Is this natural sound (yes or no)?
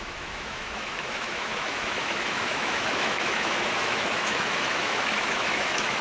no